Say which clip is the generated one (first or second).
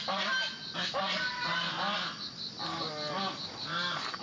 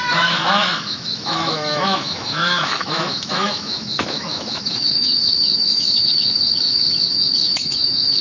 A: second